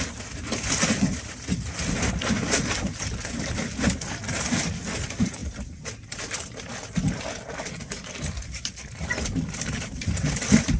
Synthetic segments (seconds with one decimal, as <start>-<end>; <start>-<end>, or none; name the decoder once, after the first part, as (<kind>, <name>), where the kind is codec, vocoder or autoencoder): none